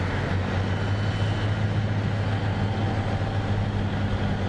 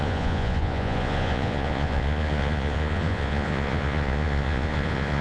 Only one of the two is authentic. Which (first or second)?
first